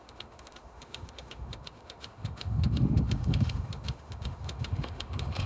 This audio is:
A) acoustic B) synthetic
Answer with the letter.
B